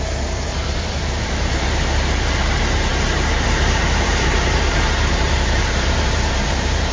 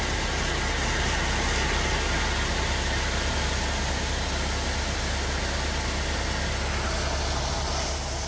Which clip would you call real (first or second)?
second